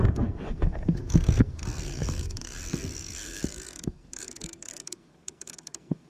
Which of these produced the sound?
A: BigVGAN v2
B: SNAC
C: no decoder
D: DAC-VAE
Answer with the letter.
B